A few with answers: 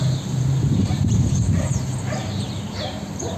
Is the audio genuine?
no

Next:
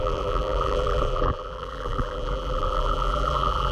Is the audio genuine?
no